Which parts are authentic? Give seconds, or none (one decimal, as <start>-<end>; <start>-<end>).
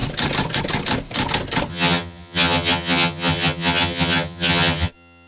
0.0-1.7